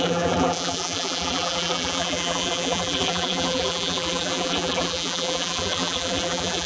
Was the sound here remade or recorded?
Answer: remade